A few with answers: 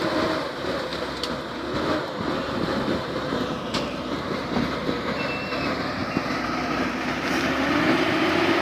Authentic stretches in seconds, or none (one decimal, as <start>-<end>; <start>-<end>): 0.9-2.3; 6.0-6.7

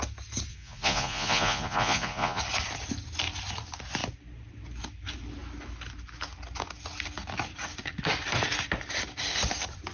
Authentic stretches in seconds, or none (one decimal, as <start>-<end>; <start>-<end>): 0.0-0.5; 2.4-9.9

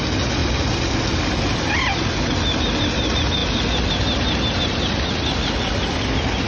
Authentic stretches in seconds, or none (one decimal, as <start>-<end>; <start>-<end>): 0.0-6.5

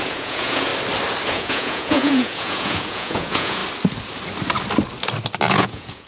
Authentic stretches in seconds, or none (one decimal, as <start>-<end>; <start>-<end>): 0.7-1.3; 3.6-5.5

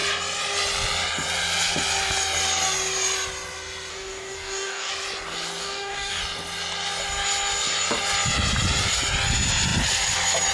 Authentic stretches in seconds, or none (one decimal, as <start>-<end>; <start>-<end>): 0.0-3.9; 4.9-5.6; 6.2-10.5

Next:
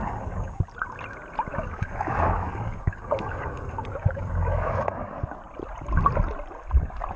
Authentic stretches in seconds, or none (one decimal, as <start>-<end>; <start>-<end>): 0.6-1.5; 5.4-7.2

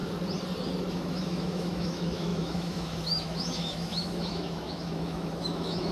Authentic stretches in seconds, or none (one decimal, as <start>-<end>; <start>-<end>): 0.0-0.9